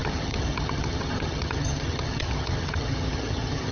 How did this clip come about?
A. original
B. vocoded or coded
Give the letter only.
B